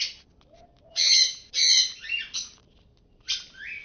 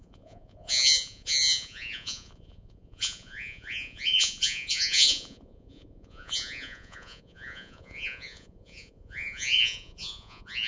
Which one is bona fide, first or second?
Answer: first